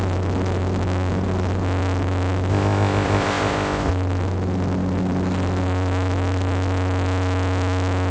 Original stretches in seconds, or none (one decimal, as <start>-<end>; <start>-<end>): 0.0-2.5; 3.9-8.1